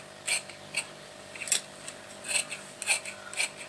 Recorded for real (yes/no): yes